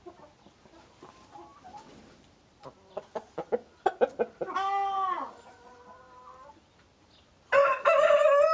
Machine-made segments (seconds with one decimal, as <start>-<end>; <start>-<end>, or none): none